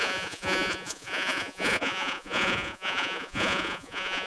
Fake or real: fake